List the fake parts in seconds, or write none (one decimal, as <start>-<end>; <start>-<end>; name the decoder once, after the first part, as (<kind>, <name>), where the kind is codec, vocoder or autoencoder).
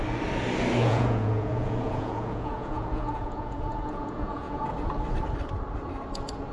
0.8-4.7 (vocoder, Vocos)